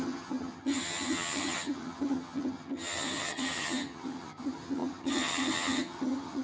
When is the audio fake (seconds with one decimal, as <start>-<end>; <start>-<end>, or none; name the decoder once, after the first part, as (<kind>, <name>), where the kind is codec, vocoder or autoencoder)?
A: 0.0-6.4 (vocoder, HiFi-GAN)

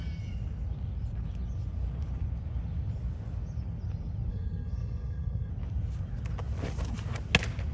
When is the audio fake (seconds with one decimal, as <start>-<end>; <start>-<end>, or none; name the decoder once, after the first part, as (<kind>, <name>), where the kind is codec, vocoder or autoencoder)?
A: 4.3-5.5 (codec, SNAC)

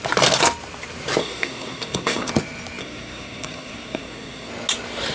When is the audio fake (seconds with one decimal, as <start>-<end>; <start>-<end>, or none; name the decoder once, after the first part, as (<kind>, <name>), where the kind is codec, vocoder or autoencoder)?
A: 1.2-2.3 (codec, SNAC); 2.8-4.5

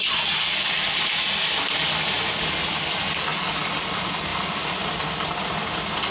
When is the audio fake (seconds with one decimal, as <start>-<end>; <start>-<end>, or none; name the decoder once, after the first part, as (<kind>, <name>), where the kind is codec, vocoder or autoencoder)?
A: 4.3-4.9 (vocoder, BigVGAN v2)

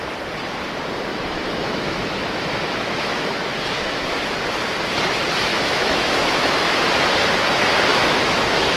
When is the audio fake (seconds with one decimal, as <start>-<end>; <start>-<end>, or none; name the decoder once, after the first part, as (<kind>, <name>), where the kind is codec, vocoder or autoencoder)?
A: 1.1-4.2 (autoencoder, DAC-VAE); 5.5-6.8; 7.9-8.8

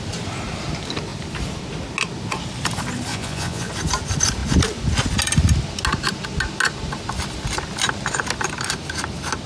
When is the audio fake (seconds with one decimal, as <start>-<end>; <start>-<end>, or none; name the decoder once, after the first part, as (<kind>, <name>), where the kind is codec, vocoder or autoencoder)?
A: 3.1-3.7 (vocoder, Vocos)

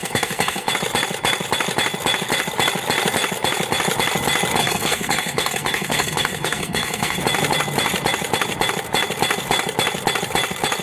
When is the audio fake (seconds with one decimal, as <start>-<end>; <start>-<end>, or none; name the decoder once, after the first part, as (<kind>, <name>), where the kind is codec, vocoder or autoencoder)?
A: 0.0-0.7 (codec, SNAC); 4.6-7.2

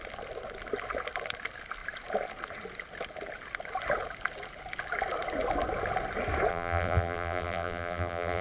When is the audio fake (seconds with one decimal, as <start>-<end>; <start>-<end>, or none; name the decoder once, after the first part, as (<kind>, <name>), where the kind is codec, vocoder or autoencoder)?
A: 6.5-8.4 (vocoder, BigVGAN v2)